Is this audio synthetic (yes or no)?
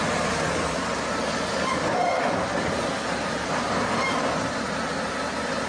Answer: no